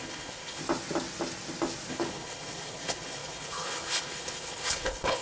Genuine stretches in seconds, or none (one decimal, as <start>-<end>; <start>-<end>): 0.6-1.9